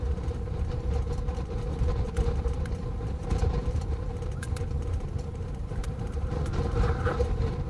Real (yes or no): no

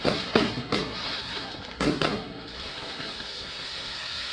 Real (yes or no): no